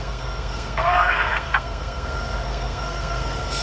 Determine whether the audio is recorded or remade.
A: remade